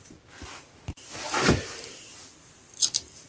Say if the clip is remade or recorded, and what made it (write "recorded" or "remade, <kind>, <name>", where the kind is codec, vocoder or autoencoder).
recorded